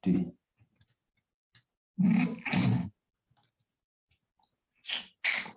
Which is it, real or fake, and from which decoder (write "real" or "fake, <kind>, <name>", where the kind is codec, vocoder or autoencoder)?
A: real